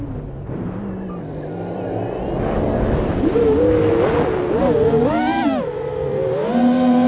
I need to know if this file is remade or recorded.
recorded